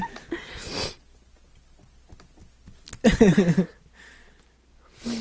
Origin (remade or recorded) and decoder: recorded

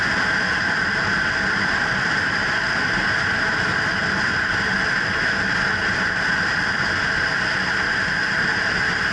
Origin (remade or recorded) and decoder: recorded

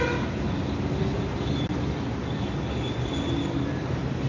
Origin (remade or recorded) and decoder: recorded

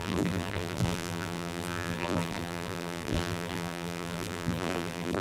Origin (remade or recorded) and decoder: remade, vocoder, BigVGAN v2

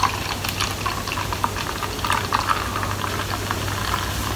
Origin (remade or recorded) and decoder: recorded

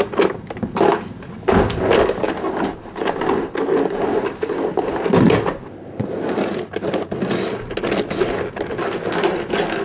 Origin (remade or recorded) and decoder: recorded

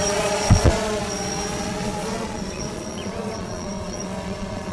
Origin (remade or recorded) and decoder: remade, vocoder, Vocos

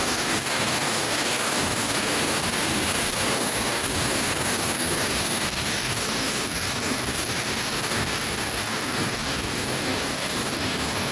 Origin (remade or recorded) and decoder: remade, codec, DAC